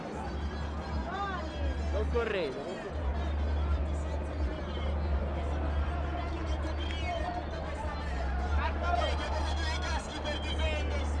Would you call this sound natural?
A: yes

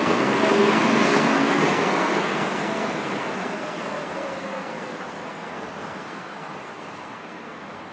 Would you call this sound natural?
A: no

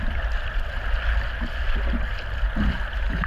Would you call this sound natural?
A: yes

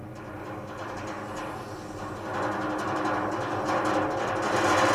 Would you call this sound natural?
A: yes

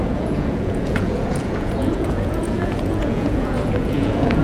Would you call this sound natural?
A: no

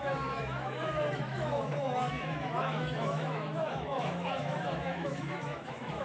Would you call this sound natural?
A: no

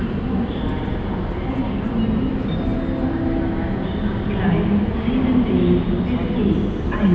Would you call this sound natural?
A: yes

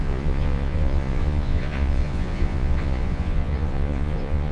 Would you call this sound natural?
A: no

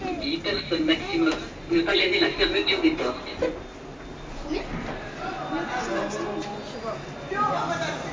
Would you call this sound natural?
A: yes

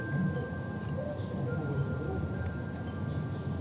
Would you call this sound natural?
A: no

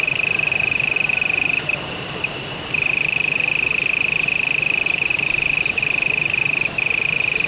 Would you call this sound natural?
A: yes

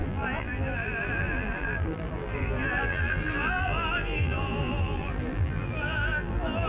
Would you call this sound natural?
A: no